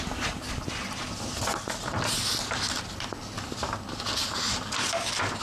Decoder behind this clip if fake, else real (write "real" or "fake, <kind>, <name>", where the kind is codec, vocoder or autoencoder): real